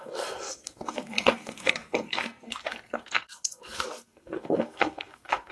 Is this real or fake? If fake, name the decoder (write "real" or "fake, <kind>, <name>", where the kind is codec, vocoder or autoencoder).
fake, codec, SNAC